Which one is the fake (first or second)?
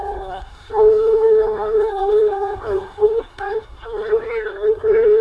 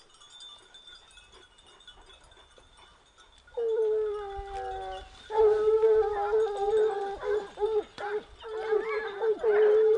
first